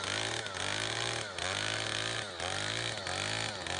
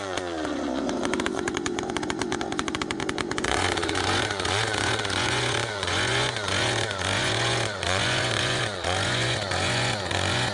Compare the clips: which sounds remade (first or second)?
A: second